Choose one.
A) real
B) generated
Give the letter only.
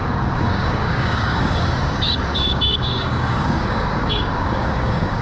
B